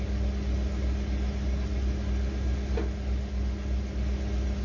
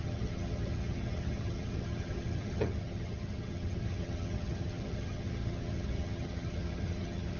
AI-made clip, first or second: second